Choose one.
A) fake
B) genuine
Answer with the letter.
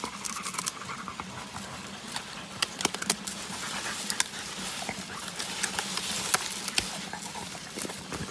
B